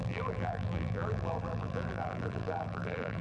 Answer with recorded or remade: remade